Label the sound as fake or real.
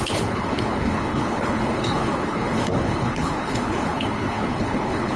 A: fake